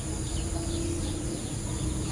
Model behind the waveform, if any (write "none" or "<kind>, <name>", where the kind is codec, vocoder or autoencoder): none